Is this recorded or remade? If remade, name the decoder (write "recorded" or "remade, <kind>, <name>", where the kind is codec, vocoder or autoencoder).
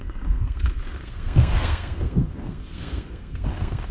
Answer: remade, codec, SNAC